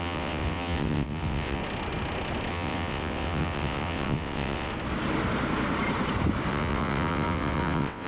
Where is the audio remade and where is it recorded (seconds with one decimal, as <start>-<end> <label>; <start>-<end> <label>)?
0.0-1.6 remade; 1.6-2.5 recorded; 2.5-4.7 remade; 4.7-6.5 recorded; 6.5-8.1 remade